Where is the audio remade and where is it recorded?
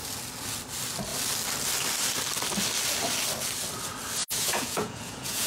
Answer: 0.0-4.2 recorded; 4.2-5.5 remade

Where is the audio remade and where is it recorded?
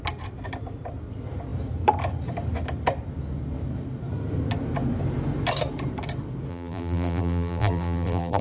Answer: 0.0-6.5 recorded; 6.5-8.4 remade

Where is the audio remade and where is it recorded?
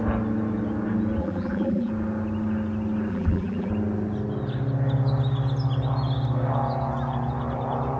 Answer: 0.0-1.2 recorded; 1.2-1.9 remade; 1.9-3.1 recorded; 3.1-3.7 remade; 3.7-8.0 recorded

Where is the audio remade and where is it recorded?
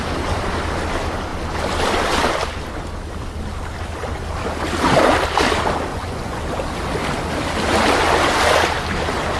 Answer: 0.0-5.9 recorded; 5.9-6.4 remade; 6.4-9.4 recorded